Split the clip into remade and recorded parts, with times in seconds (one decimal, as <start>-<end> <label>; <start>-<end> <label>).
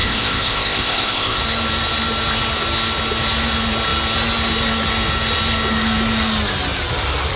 0.0-1.4 remade; 1.4-7.4 recorded